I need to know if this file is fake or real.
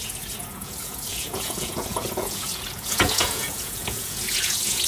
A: fake